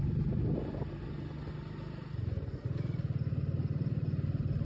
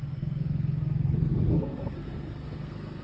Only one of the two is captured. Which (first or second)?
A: first